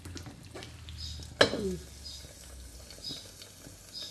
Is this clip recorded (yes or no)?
yes